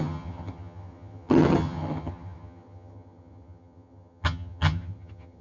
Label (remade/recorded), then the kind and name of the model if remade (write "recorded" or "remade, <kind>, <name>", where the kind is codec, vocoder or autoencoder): remade, vocoder, HiFi-GAN